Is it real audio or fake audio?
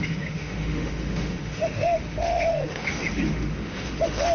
fake